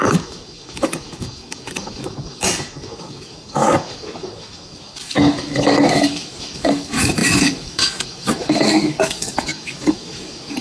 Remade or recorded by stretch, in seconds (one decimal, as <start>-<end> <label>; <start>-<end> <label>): 0.0-10.6 remade